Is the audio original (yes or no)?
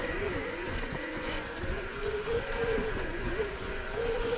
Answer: no